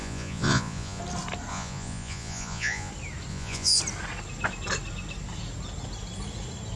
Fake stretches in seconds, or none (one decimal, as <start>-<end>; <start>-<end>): 0.0-1.0; 1.5-2.9; 3.3-3.8